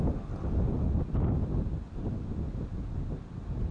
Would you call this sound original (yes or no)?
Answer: yes